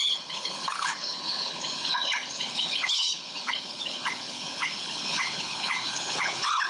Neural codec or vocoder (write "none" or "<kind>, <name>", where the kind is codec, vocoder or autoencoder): codec, HILCodec